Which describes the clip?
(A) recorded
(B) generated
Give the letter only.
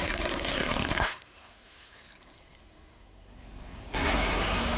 B